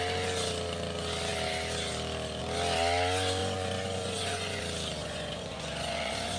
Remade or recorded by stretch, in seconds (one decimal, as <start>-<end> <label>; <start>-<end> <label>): 0.0-3.4 recorded; 3.4-4.6 remade; 4.6-5.0 recorded; 5.0-6.4 remade